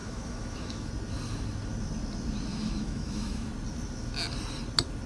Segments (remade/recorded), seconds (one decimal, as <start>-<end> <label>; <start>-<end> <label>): 0.0-0.9 remade; 0.9-2.5 recorded; 2.5-3.5 remade; 3.5-5.1 recorded

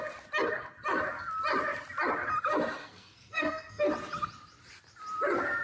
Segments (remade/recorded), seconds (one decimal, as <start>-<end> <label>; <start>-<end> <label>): 0.0-2.8 recorded; 2.8-3.8 remade; 3.8-5.6 recorded